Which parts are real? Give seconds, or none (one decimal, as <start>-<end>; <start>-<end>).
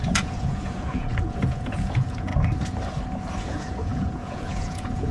2.3-3.4